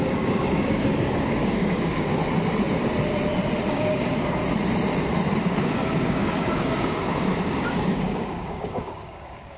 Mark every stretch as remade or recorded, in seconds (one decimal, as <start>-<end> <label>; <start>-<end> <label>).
0.0-2.2 remade; 2.2-3.7 recorded; 3.7-4.4 remade; 4.4-5.4 recorded; 5.4-9.6 remade